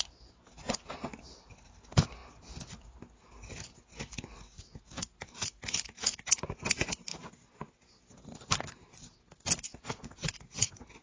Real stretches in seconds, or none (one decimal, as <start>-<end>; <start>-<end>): 0.0-11.0